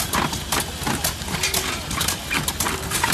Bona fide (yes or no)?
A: yes